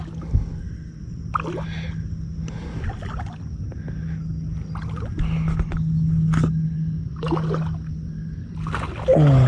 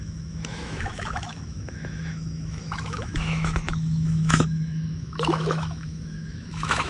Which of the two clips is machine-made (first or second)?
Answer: second